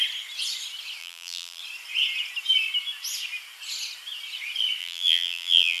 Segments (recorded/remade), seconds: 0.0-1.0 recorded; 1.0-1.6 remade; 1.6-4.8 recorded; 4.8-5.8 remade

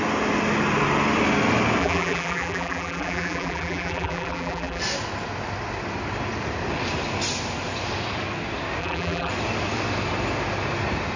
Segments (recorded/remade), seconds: 0.0-1.8 recorded; 1.8-4.8 remade; 4.8-8.8 recorded; 8.8-9.3 remade; 9.3-11.2 recorded

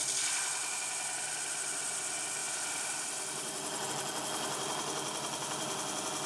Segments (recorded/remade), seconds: 0.0-2.4 recorded; 2.4-3.9 remade; 3.9-6.3 recorded

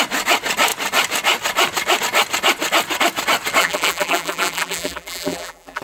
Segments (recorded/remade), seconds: 0.0-3.6 recorded; 3.6-5.8 remade

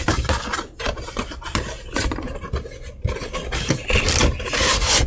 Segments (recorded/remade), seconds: 0.0-0.5 recorded; 0.5-2.6 remade; 2.6-4.2 recorded; 4.2-5.1 remade

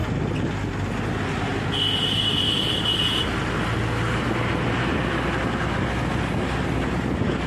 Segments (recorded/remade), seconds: 0.0-7.5 recorded

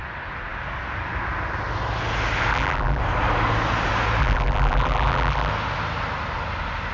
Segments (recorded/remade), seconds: 0.0-2.5 recorded; 2.5-3.0 remade; 3.0-4.2 recorded; 4.2-5.5 remade; 5.5-6.9 recorded

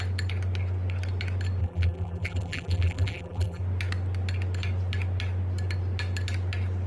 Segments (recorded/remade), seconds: 0.0-1.6 recorded; 1.6-3.6 remade; 3.6-6.9 recorded